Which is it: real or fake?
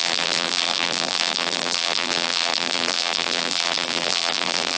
fake